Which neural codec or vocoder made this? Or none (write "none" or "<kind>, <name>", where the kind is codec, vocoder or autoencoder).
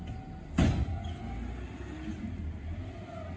none